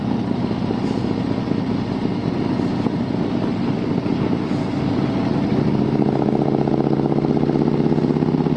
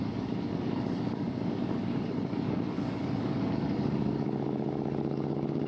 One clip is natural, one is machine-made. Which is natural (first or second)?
first